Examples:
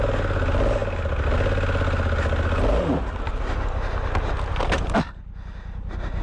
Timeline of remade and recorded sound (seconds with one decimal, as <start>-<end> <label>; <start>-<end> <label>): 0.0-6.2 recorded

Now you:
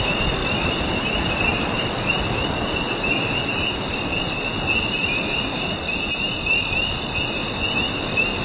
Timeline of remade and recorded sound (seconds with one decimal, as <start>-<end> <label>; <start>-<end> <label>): 0.0-8.4 recorded

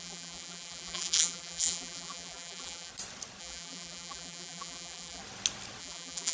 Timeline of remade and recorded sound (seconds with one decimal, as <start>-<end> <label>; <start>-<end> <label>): 0.0-2.9 remade; 2.9-3.4 recorded; 3.4-5.2 remade; 5.2-5.8 recorded; 5.8-6.3 remade

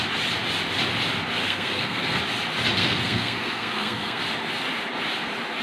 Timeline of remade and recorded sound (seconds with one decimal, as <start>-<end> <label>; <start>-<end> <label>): 0.0-1.4 recorded; 1.4-2.2 remade; 2.2-2.8 recorded; 2.8-4.2 remade; 4.2-5.6 recorded

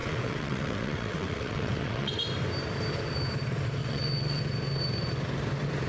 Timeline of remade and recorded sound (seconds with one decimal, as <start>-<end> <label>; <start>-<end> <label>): 0.0-2.2 remade; 2.2-3.8 recorded; 3.8-4.4 remade; 4.4-5.9 recorded

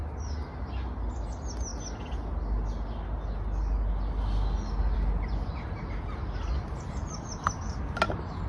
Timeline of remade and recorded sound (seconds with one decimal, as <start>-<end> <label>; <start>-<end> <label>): 0.0-8.5 recorded